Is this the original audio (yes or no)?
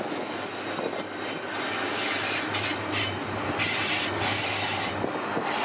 yes